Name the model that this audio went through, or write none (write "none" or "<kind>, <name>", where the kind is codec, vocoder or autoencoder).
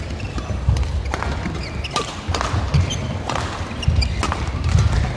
none